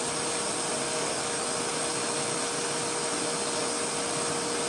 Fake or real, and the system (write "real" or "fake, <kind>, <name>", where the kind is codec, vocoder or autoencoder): real